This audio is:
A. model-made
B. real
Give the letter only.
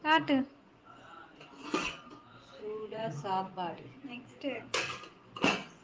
A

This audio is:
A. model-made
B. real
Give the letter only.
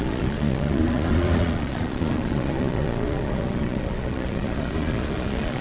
A